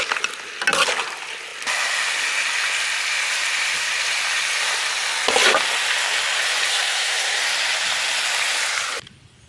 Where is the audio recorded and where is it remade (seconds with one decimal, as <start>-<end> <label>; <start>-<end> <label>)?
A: 0.0-6.7 recorded; 6.7-7.4 remade; 7.4-9.5 recorded